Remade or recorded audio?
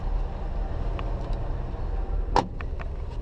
recorded